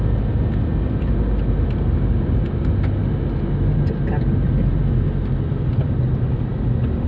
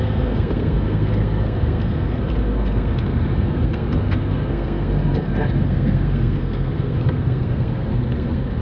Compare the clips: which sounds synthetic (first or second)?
second